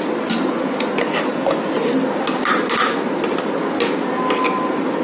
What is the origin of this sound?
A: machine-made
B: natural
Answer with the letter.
B